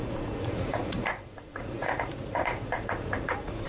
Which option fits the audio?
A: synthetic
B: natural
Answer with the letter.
A